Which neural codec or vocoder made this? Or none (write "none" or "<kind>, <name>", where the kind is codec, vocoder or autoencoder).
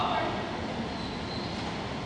none